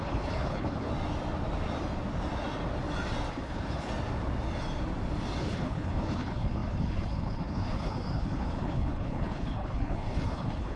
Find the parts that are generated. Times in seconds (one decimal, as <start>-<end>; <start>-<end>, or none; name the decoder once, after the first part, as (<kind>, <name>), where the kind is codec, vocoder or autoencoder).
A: 0.0-0.9 (codec, HILCodec); 3.3-3.9; 5.4-10.8